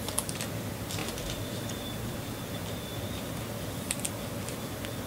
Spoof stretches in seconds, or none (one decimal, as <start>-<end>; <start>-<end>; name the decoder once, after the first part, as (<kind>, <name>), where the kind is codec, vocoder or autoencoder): none